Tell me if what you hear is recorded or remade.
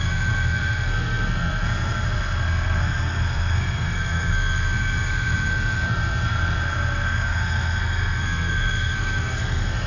remade